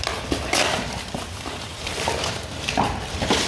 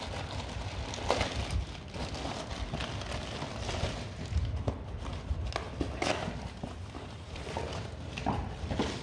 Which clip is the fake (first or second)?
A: first